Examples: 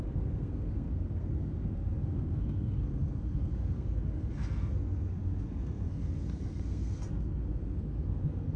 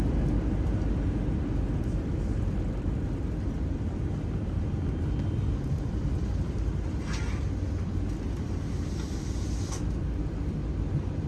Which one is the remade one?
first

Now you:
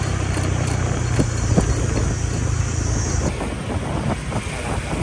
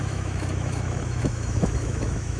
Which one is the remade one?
second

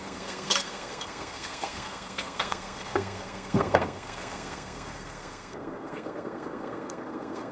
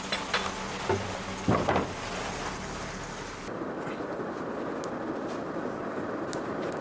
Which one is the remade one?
first